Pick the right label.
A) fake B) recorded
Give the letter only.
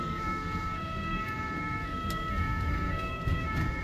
A